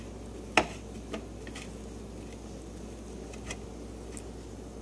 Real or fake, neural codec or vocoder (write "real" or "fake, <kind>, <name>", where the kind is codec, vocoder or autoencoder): real